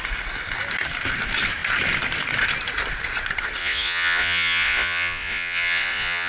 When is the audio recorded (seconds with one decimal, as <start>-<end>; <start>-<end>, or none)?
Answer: 0.0-3.6